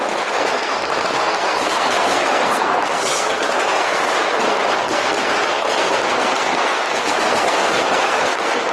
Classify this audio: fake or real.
fake